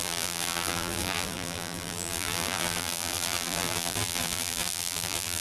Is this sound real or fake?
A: fake